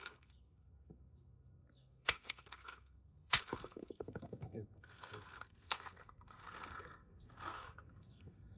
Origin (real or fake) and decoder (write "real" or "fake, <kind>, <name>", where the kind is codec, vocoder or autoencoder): fake, codec, SNAC